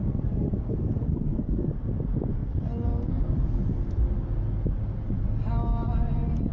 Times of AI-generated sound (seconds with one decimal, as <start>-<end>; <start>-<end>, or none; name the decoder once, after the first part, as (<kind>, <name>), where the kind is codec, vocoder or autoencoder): 0.0-1.7 (codec, SNAC)